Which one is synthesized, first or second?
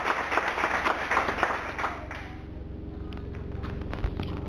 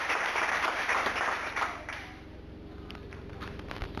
second